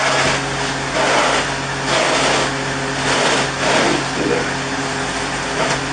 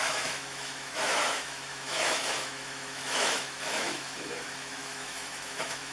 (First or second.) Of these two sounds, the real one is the first